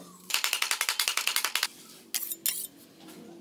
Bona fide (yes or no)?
yes